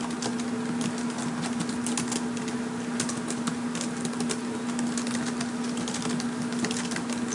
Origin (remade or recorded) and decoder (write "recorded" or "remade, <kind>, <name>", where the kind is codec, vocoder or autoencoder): recorded